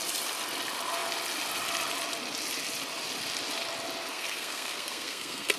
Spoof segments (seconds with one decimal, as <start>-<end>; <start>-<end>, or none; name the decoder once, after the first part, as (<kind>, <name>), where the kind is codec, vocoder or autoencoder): 4.1-5.6 (codec, SNAC)